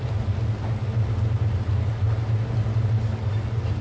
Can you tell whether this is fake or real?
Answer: real